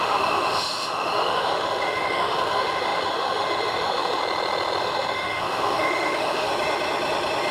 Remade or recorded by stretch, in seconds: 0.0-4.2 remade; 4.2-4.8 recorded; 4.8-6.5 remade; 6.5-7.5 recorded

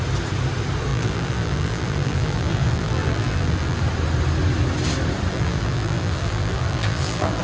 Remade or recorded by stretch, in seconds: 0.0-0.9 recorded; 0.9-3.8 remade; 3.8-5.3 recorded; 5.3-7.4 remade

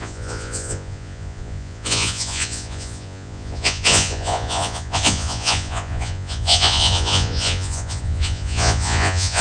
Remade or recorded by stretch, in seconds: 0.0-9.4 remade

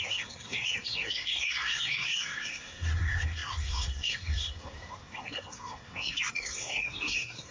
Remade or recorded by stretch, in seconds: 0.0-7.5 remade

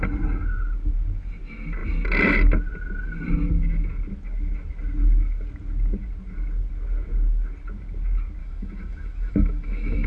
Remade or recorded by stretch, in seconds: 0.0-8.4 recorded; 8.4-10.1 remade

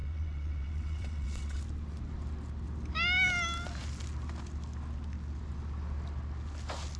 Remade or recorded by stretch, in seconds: 0.0-1.6 remade; 1.6-7.0 recorded

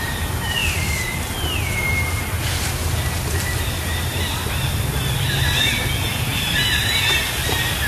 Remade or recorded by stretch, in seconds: 0.0-0.6 recorded; 0.6-1.2 remade; 1.2-6.3 recorded; 6.3-7.0 remade; 7.0-7.9 recorded

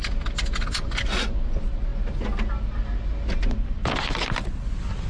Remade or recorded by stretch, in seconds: 0.0-5.1 recorded